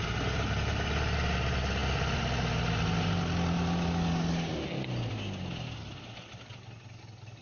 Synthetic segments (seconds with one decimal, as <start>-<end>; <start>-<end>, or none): none